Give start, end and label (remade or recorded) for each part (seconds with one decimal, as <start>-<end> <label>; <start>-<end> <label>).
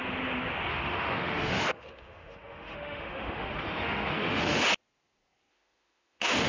0.0-0.7 recorded; 0.7-4.6 remade; 4.6-5.5 recorded; 5.5-6.5 remade